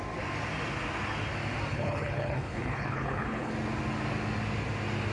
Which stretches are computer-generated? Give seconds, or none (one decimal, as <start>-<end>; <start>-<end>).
1.7-3.5